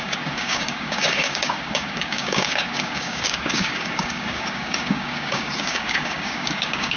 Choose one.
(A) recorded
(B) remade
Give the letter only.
B